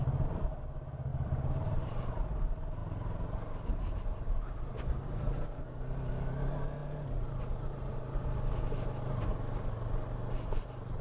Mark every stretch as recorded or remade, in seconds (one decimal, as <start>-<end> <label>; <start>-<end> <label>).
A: 0.0-1.1 recorded; 1.1-2.2 remade; 2.2-11.0 recorded